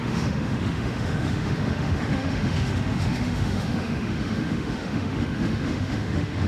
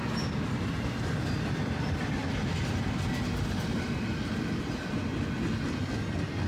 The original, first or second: second